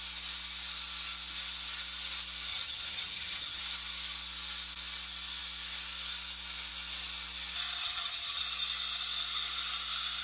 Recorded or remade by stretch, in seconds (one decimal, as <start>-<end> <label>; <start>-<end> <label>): 0.0-2.5 recorded; 2.5-3.6 remade; 3.6-7.8 recorded; 7.8-8.4 remade; 8.4-10.2 recorded

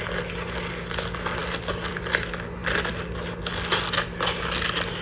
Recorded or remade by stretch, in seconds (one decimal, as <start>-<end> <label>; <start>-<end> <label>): 0.0-5.0 recorded

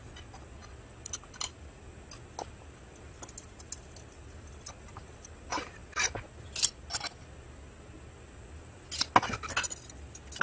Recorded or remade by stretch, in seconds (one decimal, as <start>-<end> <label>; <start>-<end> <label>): 0.0-10.4 recorded

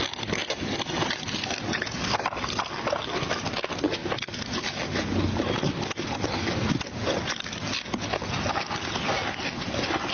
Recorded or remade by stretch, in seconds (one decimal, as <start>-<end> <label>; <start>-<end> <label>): 0.0-10.1 recorded

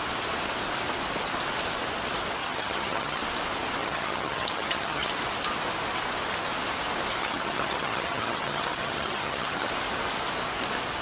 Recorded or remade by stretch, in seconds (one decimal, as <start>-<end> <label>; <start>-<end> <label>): 0.0-2.4 recorded; 2.4-3.2 remade; 3.2-3.8 recorded; 3.8-5.1 remade; 5.1-7.2 recorded; 7.2-9.7 remade; 9.7-11.0 recorded

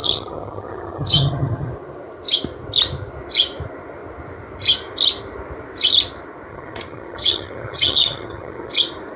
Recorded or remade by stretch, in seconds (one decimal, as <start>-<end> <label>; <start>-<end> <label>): 0.0-1.7 remade; 1.7-6.5 recorded; 6.5-8.7 remade; 8.7-9.2 recorded

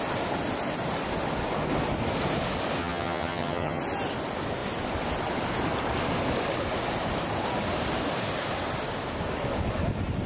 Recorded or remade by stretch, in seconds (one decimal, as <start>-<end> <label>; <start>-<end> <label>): 0.0-2.8 recorded; 2.8-3.8 remade; 3.8-10.3 recorded

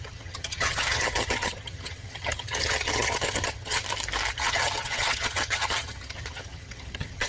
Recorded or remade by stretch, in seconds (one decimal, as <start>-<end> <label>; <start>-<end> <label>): 0.0-3.8 remade; 3.8-4.3 recorded; 4.3-7.3 remade